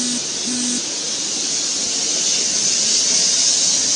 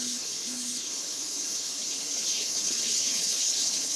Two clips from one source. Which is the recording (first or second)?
first